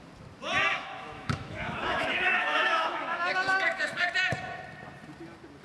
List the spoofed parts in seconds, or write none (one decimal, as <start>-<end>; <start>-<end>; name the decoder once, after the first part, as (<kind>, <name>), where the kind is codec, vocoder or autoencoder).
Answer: 0.7-4.1 (autoencoder, DAC-VAE)